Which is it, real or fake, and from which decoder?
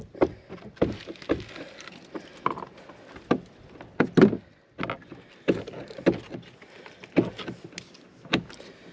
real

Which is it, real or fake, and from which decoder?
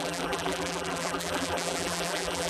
fake, vocoder, BigVGAN v2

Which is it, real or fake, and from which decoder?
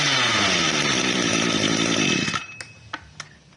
real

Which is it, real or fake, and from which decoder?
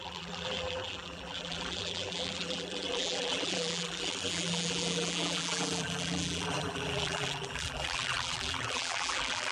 fake, vocoder, BigVGAN v2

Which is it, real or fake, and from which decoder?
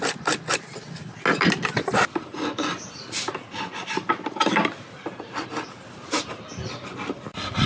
real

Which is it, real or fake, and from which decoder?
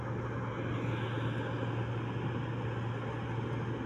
real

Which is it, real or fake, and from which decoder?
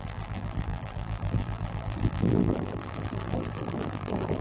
fake, vocoder, BigVGAN v2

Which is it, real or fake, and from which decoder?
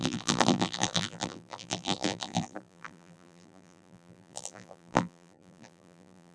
fake, vocoder, BigVGAN v2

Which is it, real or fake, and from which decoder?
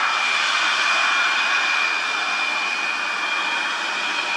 real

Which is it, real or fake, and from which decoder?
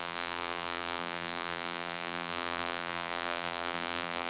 fake, vocoder, BigVGAN v2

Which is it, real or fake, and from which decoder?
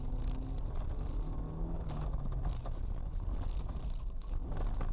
real